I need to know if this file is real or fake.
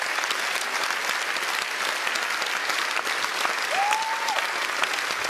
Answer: real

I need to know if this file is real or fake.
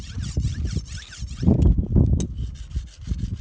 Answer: real